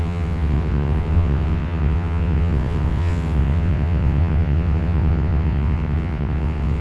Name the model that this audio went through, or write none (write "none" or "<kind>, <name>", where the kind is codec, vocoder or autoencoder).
vocoder, WaveNeXt